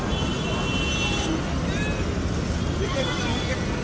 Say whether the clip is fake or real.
real